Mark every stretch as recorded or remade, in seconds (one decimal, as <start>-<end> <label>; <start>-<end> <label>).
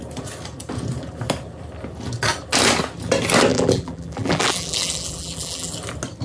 0.0-3.5 recorded; 3.5-5.7 remade; 5.7-6.2 recorded